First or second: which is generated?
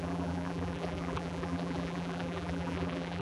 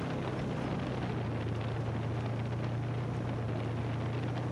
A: first